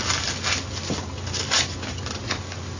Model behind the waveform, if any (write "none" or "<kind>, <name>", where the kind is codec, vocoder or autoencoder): none